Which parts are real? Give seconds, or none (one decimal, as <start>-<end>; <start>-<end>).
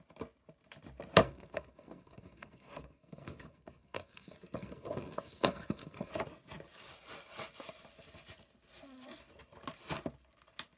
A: 0.0-1.2; 6.1-10.8